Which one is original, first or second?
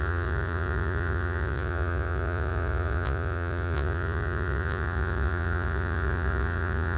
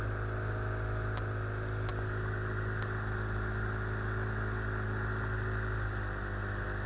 second